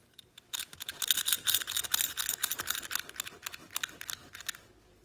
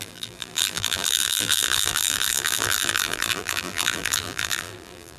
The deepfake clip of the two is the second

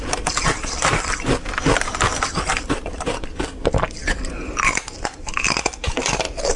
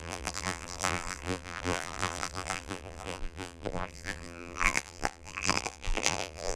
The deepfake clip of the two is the second